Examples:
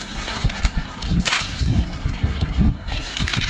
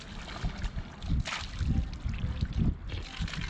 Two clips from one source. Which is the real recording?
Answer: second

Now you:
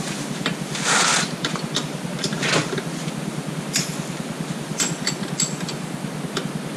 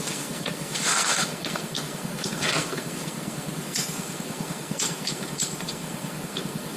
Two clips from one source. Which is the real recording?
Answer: first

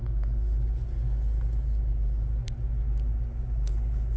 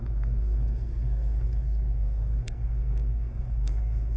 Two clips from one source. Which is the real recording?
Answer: first